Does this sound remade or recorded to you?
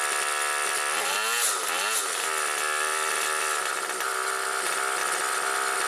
recorded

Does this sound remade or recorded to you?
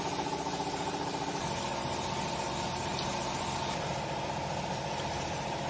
recorded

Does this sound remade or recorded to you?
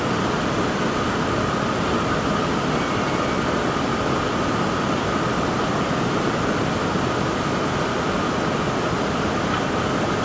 recorded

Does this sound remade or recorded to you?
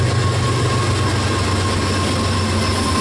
recorded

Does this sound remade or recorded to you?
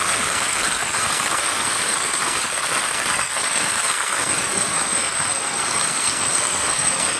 remade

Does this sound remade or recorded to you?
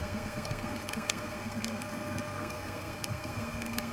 remade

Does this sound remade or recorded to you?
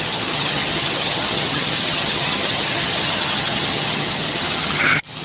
remade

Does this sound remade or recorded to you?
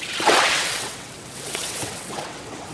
remade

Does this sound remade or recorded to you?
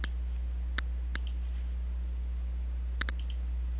recorded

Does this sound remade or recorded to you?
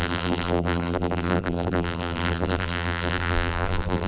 remade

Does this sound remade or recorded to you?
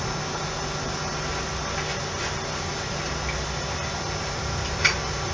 recorded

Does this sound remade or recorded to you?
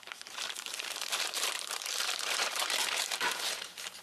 remade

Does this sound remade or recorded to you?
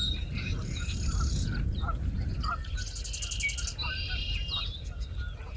recorded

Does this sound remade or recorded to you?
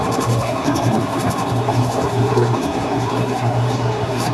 remade